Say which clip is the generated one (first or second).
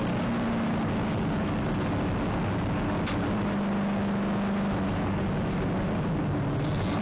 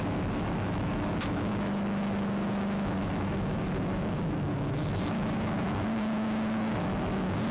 second